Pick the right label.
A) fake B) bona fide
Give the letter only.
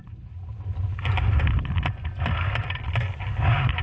B